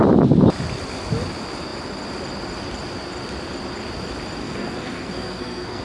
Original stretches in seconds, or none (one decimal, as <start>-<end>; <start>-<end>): 0.0-4.4